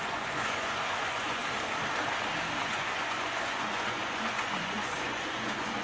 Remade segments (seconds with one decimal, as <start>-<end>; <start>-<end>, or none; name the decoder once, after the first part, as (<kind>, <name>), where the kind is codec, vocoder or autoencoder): 0.0-1.4 (vocoder, Vocos); 2.6-5.8